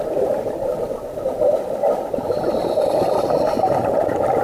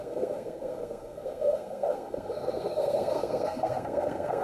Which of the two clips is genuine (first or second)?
first